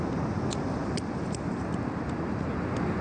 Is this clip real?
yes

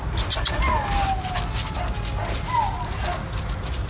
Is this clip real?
yes